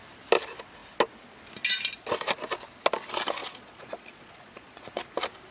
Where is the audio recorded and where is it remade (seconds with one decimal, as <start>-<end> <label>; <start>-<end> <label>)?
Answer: 0.0-3.4 recorded; 3.4-5.1 remade; 5.1-5.5 recorded